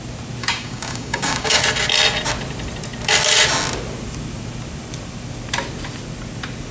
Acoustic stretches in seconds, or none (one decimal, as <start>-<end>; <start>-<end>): 0.0-0.4; 1.6-6.7

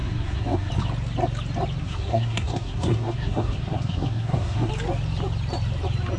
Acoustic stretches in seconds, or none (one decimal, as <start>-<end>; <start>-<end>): 0.7-1.8; 4.7-6.2

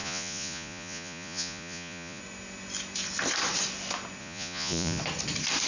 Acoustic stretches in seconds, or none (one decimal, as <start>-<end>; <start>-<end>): 2.2-4.2; 5.0-5.7

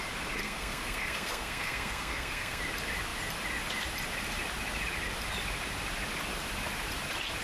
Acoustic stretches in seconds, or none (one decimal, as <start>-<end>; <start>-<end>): 0.0-0.4; 2.6-7.4

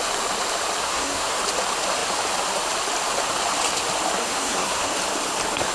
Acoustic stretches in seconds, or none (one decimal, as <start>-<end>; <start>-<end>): 0.0-0.8; 1.4-4.2; 4.9-5.7

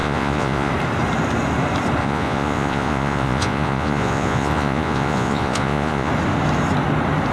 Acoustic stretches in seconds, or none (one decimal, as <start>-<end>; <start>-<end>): 0.7-2.0; 6.1-7.3

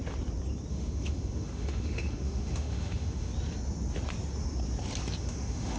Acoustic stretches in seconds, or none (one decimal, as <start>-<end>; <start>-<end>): 0.0-0.7; 3.3-5.2

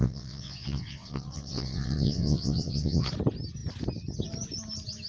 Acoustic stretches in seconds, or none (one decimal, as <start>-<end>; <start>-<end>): 3.1-5.1